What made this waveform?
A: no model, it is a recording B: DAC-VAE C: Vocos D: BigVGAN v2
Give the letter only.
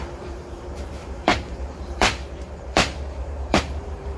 D